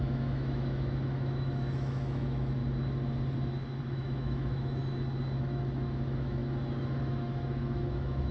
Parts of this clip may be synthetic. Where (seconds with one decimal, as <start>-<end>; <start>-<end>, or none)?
0.0-2.6; 3.8-4.8; 5.4-6.4; 7.0-8.3